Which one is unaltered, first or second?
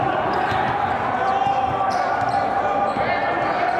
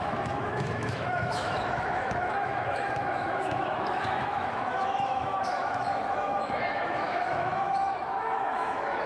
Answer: first